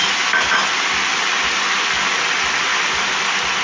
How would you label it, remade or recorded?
recorded